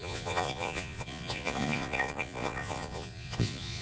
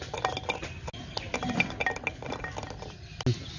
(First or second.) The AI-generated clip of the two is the first